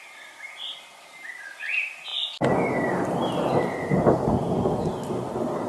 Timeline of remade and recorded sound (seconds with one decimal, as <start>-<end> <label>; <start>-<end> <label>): 0.0-5.7 recorded